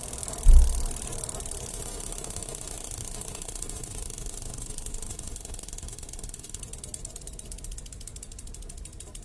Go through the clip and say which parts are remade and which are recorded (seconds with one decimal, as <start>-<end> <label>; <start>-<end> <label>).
0.0-1.7 recorded; 1.7-6.6 remade; 6.6-9.2 recorded